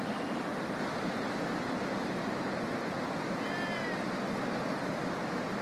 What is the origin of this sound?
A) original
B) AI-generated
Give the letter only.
A